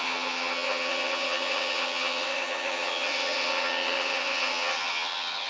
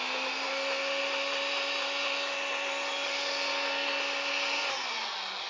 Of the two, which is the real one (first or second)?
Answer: second